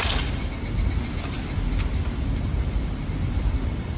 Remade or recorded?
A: recorded